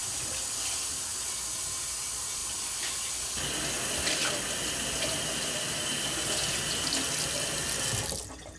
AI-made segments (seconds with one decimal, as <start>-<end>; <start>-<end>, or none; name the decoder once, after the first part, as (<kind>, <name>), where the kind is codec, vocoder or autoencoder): none

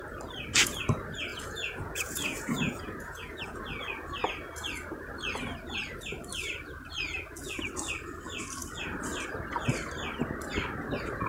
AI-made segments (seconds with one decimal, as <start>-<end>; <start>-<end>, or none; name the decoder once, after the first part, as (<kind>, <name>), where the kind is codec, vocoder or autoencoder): 1.3-3.6 (vocoder, Vocos)